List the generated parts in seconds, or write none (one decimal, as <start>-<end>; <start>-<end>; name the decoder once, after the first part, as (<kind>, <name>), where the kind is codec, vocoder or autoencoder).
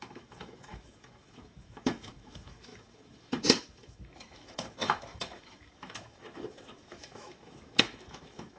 0.0-8.6 (autoencoder, DAC-VAE)